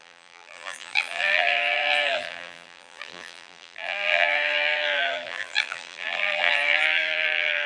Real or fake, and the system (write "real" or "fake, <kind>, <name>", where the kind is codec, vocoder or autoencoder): fake, vocoder, BigVGAN v2